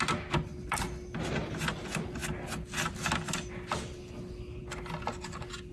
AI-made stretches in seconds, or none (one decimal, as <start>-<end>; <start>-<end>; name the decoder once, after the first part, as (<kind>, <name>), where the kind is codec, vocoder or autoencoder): none

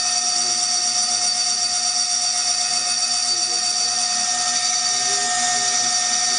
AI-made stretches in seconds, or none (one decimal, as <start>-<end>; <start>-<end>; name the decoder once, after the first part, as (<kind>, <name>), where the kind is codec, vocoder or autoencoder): none

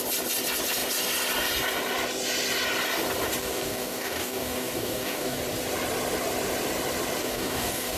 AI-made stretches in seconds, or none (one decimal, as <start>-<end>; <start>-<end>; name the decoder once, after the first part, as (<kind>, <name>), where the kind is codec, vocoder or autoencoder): 3.4-5.4 (codec, DAC); 7.2-8.0